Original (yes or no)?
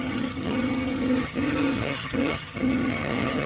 no